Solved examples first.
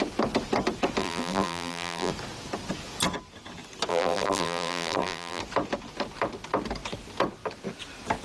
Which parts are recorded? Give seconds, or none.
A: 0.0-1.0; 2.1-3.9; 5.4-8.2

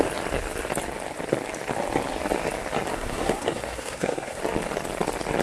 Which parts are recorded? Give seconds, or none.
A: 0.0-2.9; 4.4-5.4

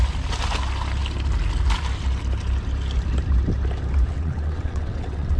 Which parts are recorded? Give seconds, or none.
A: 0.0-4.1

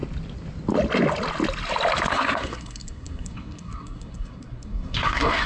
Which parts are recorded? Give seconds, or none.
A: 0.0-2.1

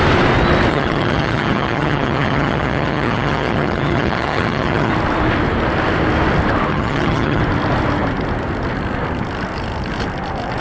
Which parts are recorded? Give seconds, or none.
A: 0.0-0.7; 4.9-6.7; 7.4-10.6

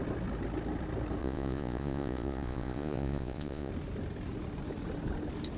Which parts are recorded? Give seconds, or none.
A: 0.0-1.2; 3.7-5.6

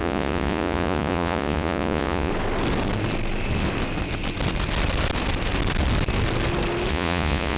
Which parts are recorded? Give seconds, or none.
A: 2.3-6.9